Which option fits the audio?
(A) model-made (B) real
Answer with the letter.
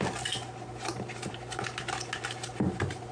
B